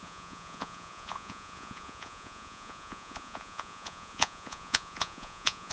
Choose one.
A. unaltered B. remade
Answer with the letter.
B